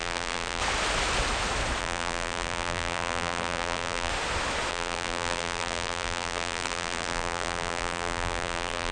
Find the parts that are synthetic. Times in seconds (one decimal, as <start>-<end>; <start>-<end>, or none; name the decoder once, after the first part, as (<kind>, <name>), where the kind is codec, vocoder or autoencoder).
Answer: 0.0-0.6 (vocoder, BigVGAN v2); 1.8-4.1; 4.7-8.9